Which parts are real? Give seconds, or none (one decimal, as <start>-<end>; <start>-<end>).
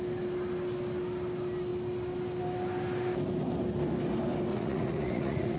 0.0-4.5